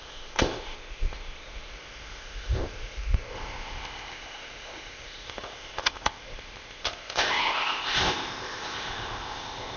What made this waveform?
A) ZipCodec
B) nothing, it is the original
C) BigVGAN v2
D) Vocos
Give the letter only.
A